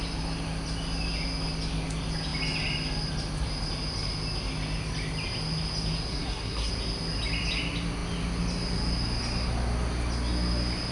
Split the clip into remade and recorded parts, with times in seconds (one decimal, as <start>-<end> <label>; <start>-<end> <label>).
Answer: 0.0-6.1 recorded; 6.1-6.7 remade; 6.7-10.9 recorded